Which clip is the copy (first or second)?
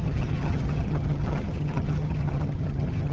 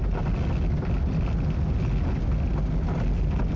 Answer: first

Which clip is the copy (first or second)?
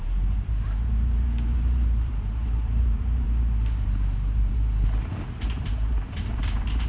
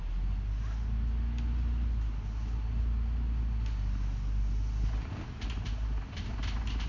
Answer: first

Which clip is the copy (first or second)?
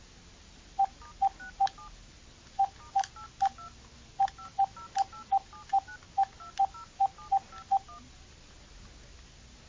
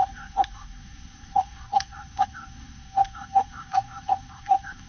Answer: second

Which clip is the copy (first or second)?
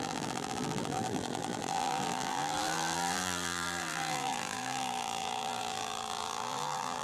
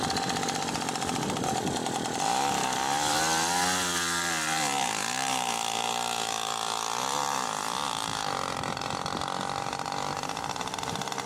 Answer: first